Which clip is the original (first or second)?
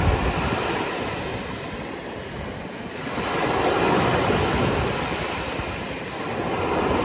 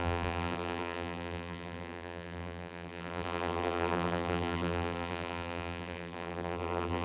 first